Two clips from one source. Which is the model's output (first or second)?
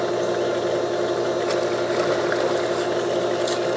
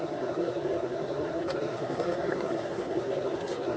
second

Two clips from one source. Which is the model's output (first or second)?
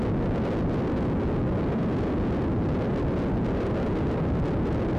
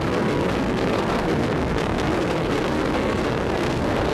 second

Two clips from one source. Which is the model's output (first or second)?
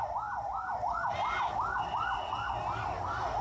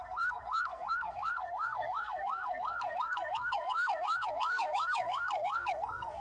second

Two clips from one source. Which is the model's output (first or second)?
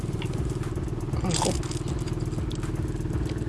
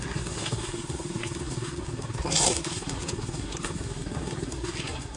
second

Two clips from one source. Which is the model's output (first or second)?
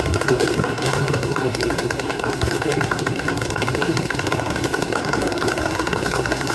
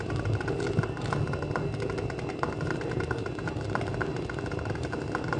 first